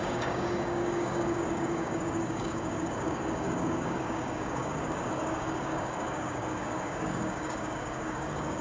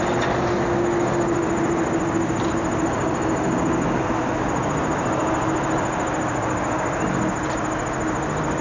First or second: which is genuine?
second